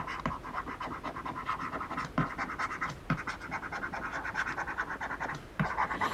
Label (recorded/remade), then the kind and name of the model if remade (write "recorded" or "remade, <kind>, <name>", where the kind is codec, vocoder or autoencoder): recorded